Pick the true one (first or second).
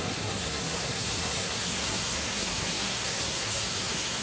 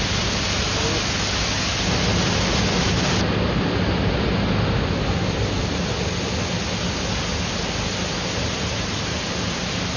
second